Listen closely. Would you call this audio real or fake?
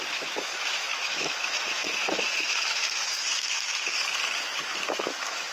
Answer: fake